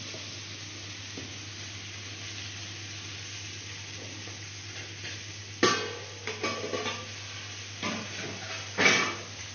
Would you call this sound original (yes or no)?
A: yes